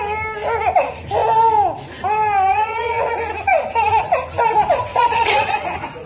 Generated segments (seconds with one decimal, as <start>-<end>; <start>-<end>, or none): 2.5-3.1; 4.9-6.1

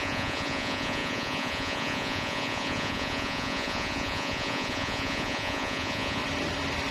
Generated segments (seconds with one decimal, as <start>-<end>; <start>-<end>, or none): 0.0-6.2

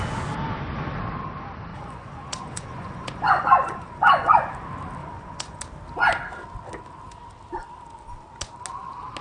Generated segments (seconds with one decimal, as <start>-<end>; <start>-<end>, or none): 1.7-4.5; 5.0-5.6

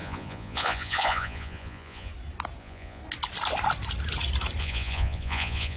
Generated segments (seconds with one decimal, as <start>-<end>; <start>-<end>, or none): 0.0-2.1; 2.6-3.0; 4.6-5.8

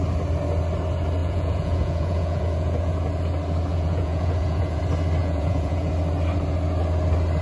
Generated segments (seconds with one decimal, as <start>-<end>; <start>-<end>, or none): 1.2-3.1; 3.7-4.8; 5.2-5.9

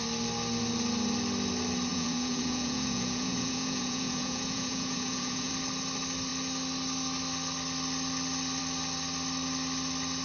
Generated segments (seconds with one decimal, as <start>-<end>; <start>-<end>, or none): 1.9-5.5